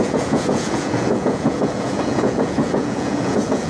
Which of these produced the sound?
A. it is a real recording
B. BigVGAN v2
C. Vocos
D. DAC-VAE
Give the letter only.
C